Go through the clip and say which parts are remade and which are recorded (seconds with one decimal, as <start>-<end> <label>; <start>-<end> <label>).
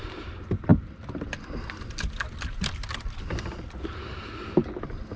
0.0-5.2 recorded